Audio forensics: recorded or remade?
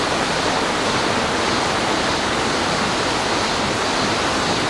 recorded